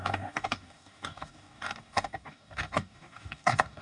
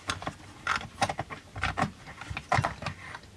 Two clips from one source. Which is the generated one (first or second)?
first